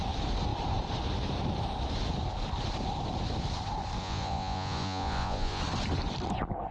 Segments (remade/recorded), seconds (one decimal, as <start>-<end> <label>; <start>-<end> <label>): 0.0-4.0 recorded; 4.0-5.6 remade; 5.6-6.7 recorded